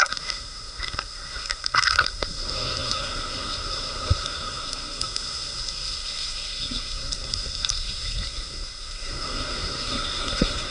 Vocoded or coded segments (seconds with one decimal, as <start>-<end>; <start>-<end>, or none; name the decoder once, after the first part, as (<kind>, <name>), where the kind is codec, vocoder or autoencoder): 0.0-10.7 (codec, SNAC)